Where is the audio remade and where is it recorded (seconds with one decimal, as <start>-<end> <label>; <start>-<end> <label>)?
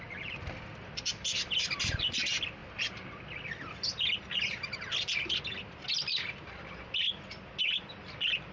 0.0-8.5 recorded